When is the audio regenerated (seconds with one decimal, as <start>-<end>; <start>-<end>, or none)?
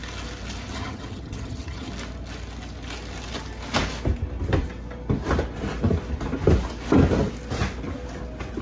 0.7-1.9